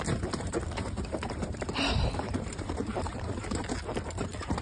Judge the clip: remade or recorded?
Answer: remade